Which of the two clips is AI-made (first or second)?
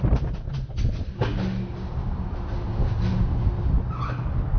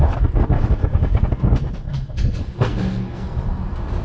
second